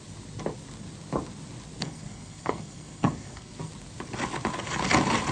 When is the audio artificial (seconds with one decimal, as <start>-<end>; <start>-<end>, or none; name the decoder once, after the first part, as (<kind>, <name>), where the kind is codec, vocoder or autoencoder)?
1.8-3.7 (codec, SNAC)